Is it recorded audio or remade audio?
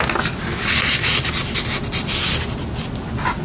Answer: recorded